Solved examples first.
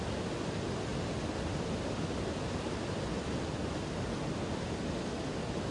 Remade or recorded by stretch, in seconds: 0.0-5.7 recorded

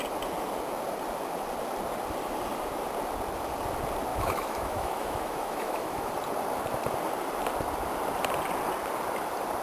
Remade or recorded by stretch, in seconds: 0.0-4.1 recorded; 4.1-6.1 remade; 6.1-9.6 recorded

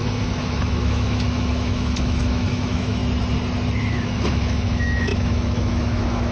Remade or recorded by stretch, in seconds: 0.0-3.0 remade; 3.0-3.9 recorded; 3.9-6.3 remade

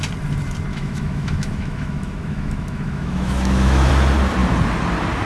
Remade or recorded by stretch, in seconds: 0.0-0.7 recorded; 0.7-3.9 remade; 3.9-5.3 recorded

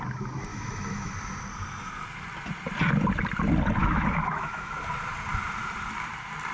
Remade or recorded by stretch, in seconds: 0.0-0.5 recorded; 0.5-1.1 remade; 1.1-3.8 recorded; 3.8-4.7 remade; 4.7-6.5 recorded

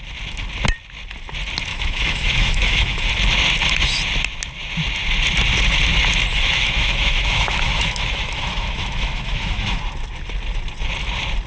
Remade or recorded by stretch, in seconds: 0.0-1.7 recorded; 1.7-3.1 remade; 3.1-6.3 recorded; 6.3-9.8 remade; 9.8-11.5 recorded